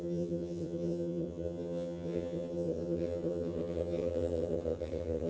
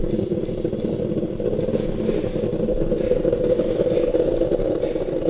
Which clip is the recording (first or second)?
second